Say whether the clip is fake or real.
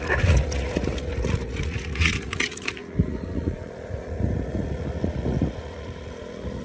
fake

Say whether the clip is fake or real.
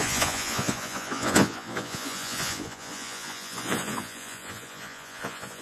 fake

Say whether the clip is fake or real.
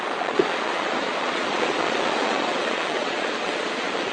fake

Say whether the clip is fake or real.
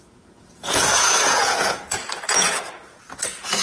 fake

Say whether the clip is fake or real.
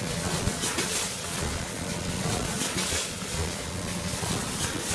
fake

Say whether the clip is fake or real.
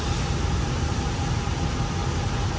real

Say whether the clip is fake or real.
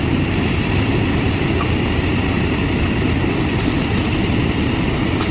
real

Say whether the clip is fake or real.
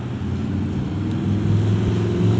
real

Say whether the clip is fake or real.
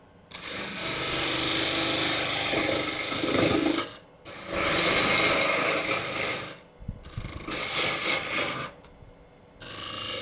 real